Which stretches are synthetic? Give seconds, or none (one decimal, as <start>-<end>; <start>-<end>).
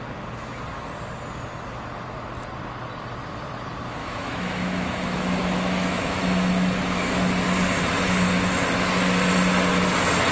4.0-7.1